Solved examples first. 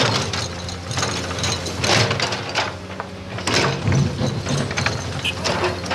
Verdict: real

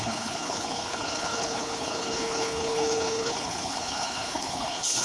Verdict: fake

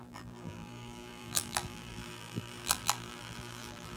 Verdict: fake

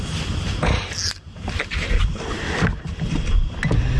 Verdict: real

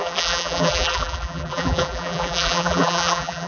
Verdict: fake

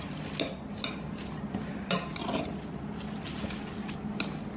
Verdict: real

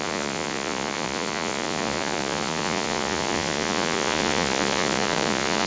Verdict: fake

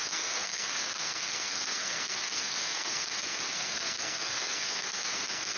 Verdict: fake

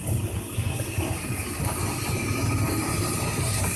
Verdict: real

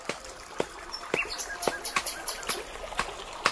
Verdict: fake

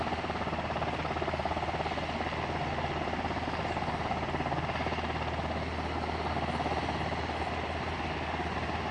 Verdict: real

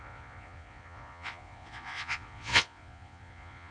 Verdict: fake